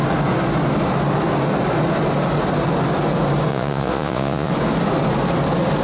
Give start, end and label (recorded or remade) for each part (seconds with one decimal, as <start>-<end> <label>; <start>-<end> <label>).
0.0-3.5 recorded; 3.5-4.5 remade; 4.5-5.8 recorded